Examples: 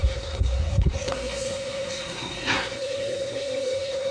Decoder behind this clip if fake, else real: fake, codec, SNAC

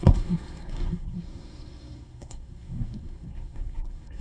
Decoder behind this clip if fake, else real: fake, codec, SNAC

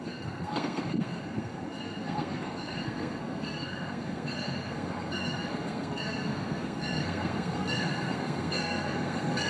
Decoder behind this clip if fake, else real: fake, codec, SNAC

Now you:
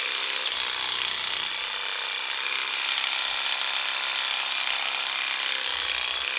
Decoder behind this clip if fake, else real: real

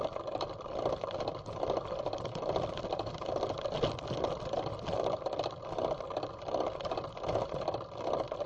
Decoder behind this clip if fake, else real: real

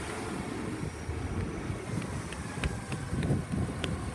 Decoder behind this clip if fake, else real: real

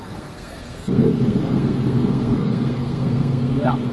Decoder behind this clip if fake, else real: fake, codec, SNAC